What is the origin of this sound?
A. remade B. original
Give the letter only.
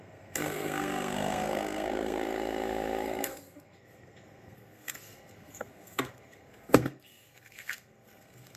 A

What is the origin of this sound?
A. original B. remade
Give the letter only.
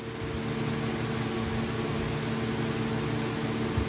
A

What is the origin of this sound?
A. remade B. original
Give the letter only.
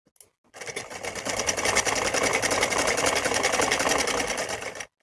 B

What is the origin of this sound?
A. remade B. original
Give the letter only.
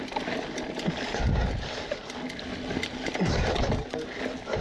B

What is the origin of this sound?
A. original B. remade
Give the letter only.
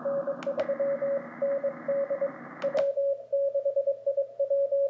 A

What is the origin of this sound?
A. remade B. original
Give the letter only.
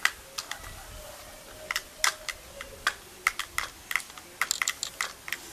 B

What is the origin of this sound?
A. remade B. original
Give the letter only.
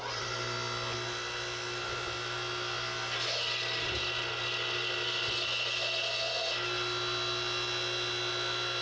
B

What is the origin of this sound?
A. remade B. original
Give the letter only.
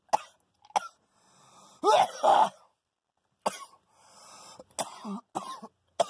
B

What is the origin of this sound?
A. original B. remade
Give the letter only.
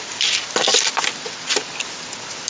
A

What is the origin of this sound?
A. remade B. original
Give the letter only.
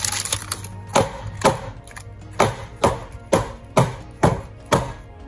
B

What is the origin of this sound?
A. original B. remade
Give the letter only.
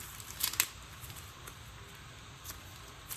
A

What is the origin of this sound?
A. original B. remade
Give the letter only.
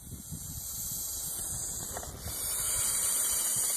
A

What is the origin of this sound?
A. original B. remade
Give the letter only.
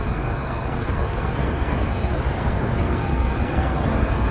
B